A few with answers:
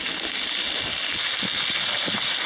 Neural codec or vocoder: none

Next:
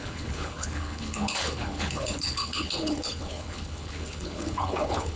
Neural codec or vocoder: codec, HILCodec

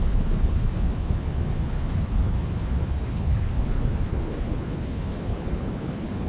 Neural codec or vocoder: codec, HILCodec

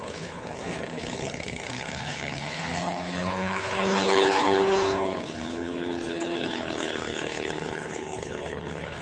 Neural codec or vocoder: codec, HILCodec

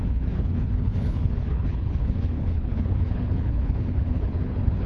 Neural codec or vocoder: codec, HILCodec